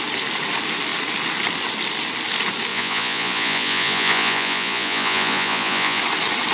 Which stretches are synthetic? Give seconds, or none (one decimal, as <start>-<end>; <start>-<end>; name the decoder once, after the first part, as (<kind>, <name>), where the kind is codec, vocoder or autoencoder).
2.7-6.0 (vocoder, Vocos)